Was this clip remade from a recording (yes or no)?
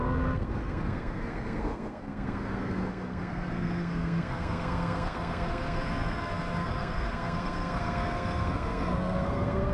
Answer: yes